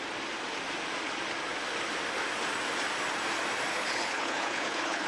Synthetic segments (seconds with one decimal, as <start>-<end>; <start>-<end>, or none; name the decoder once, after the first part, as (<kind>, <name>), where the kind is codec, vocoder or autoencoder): 3.7-5.1 (codec, HILCodec)